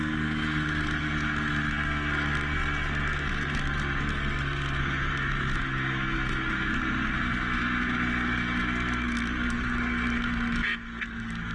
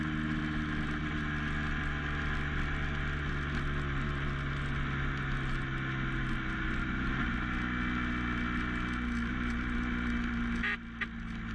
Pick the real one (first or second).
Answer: second